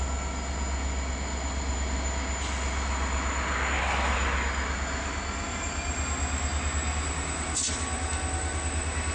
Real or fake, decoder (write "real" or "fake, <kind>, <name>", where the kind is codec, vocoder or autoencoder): real